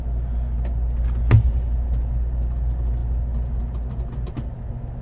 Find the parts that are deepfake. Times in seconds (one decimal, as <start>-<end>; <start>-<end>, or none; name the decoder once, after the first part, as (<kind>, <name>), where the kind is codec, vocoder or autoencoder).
none